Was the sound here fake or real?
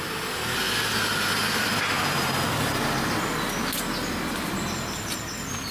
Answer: real